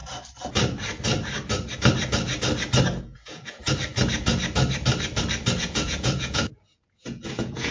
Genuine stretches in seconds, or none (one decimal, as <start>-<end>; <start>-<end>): 0.0-3.0; 3.6-5.6